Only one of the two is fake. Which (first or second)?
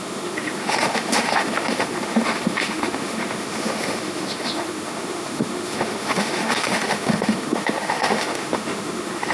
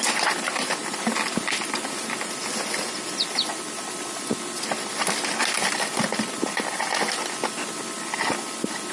first